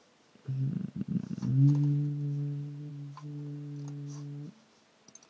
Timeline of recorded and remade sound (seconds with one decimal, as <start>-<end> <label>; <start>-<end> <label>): 0.0-5.3 recorded